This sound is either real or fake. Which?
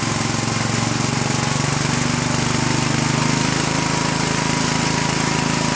real